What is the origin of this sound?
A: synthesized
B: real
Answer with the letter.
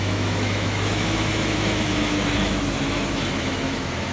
A